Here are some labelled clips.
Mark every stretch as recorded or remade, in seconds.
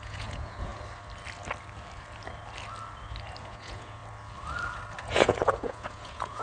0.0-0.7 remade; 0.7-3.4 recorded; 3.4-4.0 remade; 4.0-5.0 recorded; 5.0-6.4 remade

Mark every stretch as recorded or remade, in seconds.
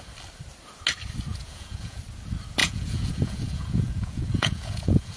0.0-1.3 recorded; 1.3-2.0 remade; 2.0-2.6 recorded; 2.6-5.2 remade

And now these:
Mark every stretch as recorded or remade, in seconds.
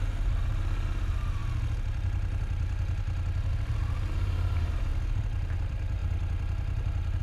0.0-1.4 remade; 1.4-3.5 recorded; 3.5-4.9 remade; 4.9-5.5 recorded; 5.5-6.0 remade; 6.0-7.2 recorded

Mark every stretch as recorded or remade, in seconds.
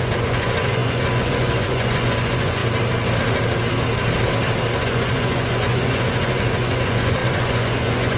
0.0-2.6 remade; 2.6-4.8 recorded; 4.8-8.2 remade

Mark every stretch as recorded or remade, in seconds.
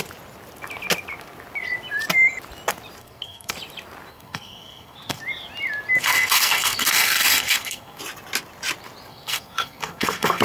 0.0-3.0 recorded; 3.0-3.5 remade; 3.5-4.1 recorded; 4.1-5.2 remade; 5.2-6.0 recorded; 6.0-8.0 remade; 8.0-9.1 recorded; 9.1-10.4 remade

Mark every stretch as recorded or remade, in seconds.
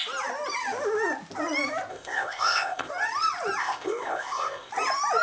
0.0-1.9 recorded; 1.9-2.9 remade; 2.9-3.6 recorded; 3.6-4.7 remade; 4.7-5.2 recorded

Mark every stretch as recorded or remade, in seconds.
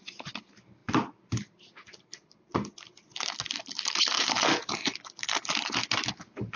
0.0-6.6 recorded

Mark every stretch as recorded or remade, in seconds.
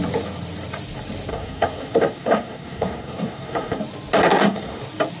0.0-1.3 recorded; 1.3-3.8 remade; 3.8-4.2 recorded; 4.2-4.8 remade; 4.8-5.2 recorded